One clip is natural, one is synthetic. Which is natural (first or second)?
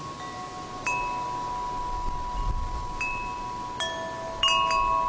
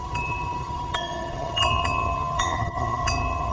first